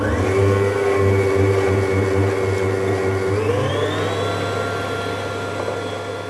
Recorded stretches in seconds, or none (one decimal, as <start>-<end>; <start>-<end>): 0.0-6.3